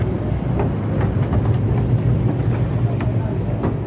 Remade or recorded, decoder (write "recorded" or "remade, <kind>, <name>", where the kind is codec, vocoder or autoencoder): recorded